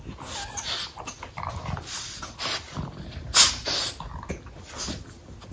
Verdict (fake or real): real